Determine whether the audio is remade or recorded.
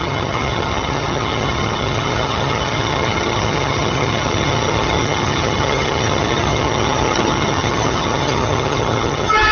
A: remade